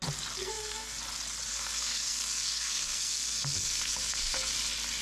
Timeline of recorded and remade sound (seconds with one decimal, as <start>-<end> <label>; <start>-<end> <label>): 0.0-0.4 recorded; 0.4-1.0 remade; 1.0-1.5 recorded; 1.5-4.5 remade; 4.5-5.0 recorded